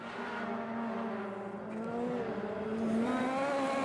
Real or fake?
real